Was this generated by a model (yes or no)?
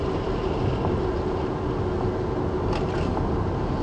no